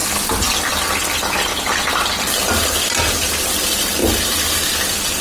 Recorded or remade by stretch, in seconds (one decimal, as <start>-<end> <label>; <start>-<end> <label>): 0.0-5.2 recorded